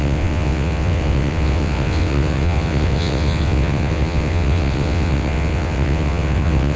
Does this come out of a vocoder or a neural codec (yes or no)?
yes